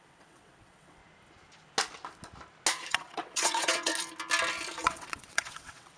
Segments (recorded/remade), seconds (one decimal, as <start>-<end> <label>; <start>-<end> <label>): 0.0-1.0 remade; 1.0-2.9 recorded; 2.9-3.9 remade; 3.9-4.8 recorded; 4.8-6.0 remade